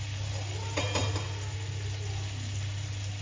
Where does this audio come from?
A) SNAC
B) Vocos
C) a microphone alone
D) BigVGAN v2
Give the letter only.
C